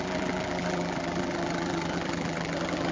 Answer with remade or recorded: remade